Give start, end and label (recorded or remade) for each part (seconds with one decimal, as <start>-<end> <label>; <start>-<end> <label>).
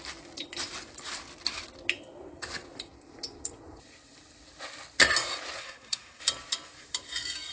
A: 0.0-5.6 recorded; 5.6-6.2 remade; 6.2-7.5 recorded